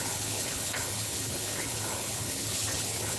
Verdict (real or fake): fake